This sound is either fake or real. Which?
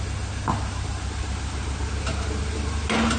real